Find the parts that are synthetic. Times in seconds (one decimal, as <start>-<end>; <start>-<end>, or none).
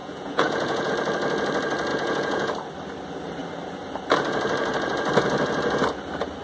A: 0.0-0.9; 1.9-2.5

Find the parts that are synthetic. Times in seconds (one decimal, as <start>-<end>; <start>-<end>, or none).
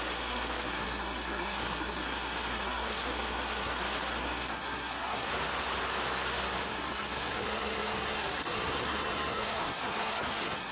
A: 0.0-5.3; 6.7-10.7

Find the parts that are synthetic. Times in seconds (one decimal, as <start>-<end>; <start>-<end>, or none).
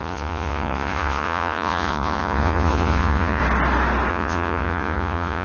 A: 0.0-3.4; 4.1-5.4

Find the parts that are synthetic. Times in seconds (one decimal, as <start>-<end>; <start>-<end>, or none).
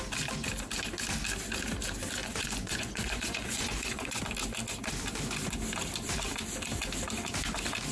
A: 2.2-4.2